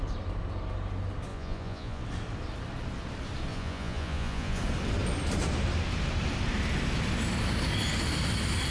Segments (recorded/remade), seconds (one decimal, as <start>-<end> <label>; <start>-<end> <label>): 0.0-1.3 recorded; 1.3-2.0 remade; 2.0-3.5 recorded; 3.5-4.6 remade; 4.6-8.7 recorded

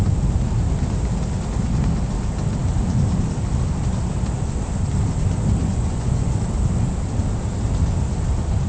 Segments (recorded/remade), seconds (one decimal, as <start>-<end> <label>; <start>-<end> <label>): 0.0-5.6 recorded; 5.6-6.4 remade; 6.4-8.7 recorded

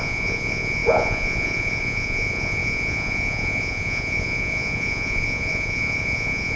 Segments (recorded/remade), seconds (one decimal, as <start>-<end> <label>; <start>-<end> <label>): 0.0-6.6 remade